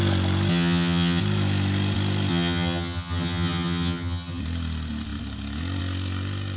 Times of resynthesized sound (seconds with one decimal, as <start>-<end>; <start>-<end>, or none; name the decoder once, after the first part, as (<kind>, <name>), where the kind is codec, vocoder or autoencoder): 0.5-1.2 (vocoder, HiFi-GAN); 2.3-4.4